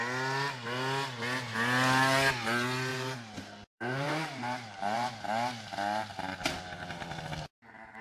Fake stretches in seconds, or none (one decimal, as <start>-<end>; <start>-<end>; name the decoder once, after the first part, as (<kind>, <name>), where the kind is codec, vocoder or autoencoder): 2.9-5.1 (vocoder, BigVGAN v2)